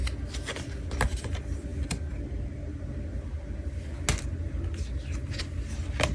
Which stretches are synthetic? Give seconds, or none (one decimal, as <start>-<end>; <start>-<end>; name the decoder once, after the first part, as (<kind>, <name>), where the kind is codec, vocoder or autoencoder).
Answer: none